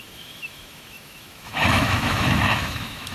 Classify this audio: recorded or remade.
remade